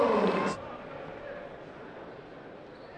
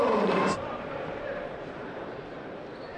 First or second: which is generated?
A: second